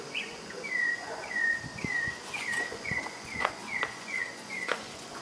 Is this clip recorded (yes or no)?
no